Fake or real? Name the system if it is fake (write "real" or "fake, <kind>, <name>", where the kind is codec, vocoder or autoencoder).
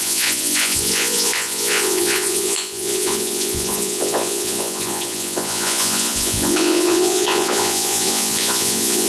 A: fake, vocoder, Vocos